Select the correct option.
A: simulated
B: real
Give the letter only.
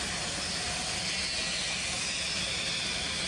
B